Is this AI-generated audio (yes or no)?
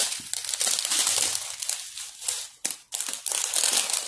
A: no